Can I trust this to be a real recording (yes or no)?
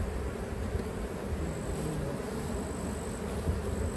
yes